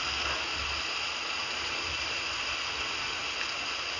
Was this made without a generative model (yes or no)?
yes